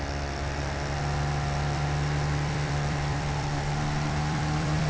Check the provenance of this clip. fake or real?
fake